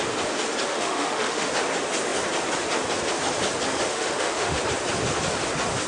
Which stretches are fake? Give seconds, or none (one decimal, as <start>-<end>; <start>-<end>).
0.7-1.5; 3.9-4.6